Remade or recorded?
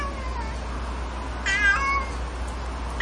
recorded